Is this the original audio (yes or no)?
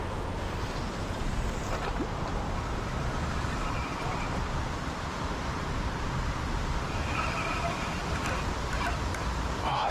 yes